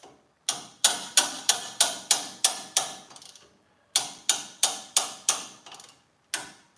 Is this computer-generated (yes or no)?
no